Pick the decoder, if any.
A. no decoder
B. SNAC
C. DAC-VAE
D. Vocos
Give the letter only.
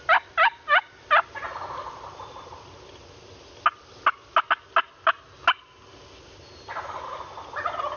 A